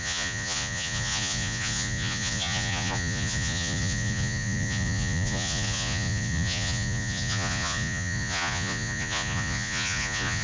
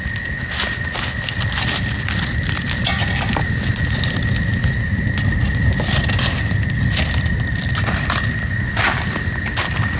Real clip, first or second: second